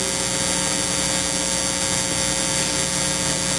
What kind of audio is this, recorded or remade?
recorded